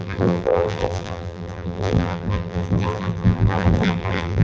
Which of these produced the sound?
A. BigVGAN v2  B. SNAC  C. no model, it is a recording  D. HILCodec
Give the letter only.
A